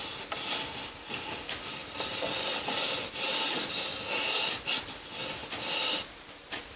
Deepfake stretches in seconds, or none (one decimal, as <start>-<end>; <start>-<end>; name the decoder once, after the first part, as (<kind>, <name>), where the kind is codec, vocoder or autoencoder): 1.8-3.8 (vocoder, BigVGAN v2); 5.4-6.8